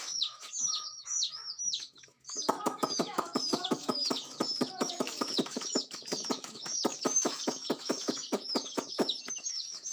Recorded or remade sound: remade